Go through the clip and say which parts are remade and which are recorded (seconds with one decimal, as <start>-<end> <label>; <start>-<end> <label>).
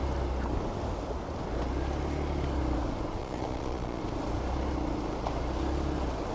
0.0-3.2 recorded; 3.2-4.0 remade; 4.0-6.3 recorded